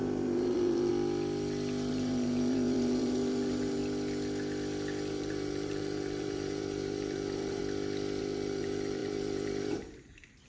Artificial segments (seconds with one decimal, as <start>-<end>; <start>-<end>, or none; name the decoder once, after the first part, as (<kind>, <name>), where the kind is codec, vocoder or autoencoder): 0.0-0.9 (vocoder, BigVGAN v2); 1.9-3.8; 5.1-7.6; 8.2-10.5

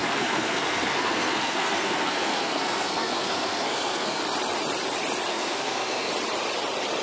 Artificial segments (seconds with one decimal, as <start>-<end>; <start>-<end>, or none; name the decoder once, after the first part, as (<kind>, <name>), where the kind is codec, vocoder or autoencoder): 0.0-4.2 (codec, SNAC); 5.3-6.1

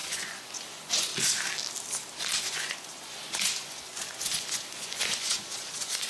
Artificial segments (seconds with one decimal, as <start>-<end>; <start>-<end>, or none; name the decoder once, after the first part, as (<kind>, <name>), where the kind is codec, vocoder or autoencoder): 0.0-1.1 (vocoder, Vocos); 2.4-6.1

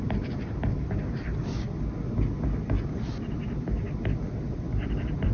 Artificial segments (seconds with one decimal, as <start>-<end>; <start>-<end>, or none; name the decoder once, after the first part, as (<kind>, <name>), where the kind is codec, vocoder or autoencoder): 0.0-1.3 (vocoder, BigVGAN v2); 4.2-5.3

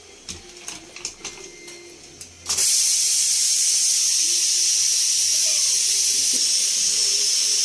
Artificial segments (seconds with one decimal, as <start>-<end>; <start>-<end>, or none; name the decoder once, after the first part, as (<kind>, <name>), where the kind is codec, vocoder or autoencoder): none

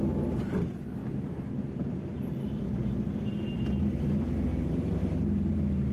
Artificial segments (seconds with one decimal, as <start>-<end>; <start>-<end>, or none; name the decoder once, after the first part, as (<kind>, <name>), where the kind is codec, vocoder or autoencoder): 1.0-1.7 (vocoder, BigVGAN v2); 4.5-5.0

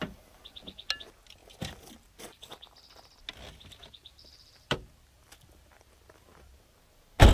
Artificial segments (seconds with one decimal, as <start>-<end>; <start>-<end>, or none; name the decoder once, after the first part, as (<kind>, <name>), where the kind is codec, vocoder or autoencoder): 4.0-6.8 (vocoder, BigVGAN v2)